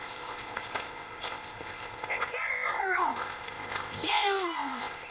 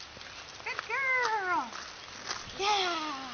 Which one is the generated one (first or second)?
first